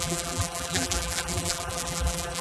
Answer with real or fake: fake